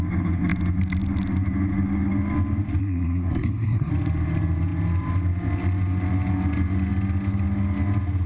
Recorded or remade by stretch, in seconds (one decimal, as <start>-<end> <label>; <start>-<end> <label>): 0.0-2.8 recorded; 2.8-3.9 remade; 3.9-8.3 recorded